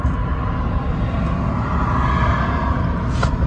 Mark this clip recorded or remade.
recorded